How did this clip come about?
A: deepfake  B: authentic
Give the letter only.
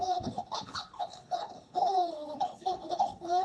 A